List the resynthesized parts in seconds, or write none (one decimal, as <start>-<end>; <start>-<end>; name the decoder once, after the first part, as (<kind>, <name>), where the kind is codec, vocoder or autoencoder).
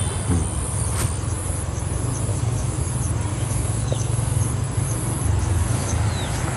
2.3-2.8 (codec, DAC); 3.3-4.4; 5.4-6.1